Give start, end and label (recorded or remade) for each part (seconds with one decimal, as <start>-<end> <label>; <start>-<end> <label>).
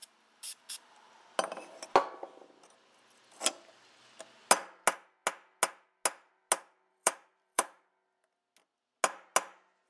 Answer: 0.0-6.9 recorded; 6.9-7.9 remade; 7.9-9.9 recorded